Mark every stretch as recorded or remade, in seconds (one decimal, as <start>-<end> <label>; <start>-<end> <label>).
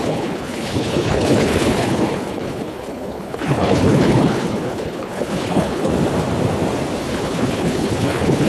0.0-5.9 remade; 5.9-7.1 recorded; 7.1-8.5 remade